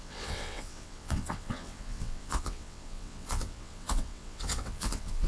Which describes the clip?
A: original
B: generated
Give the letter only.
B